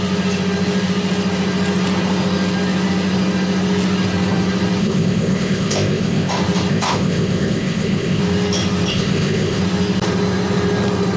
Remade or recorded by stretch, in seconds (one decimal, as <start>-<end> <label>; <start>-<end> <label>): 0.0-4.8 recorded; 4.8-6.3 remade; 6.3-6.7 recorded; 6.7-8.2 remade; 8.2-8.9 recorded; 8.9-9.6 remade; 9.6-11.2 recorded